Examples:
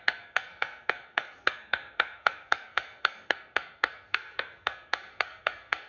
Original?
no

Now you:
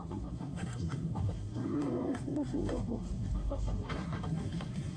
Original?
no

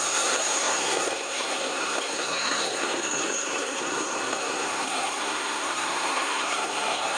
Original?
no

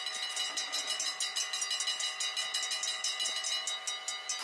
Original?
yes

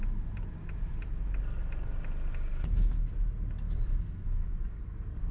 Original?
yes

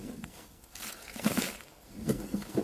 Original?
no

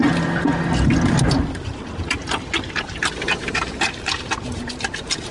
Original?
yes